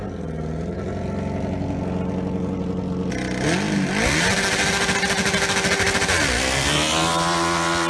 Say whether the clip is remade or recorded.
recorded